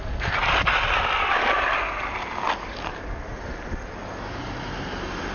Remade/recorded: recorded